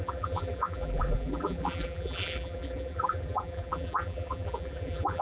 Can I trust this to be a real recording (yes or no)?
no